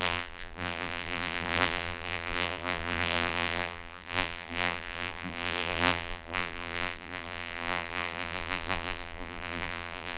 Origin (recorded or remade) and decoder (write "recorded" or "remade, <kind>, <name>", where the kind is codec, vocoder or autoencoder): remade, vocoder, BigVGAN v2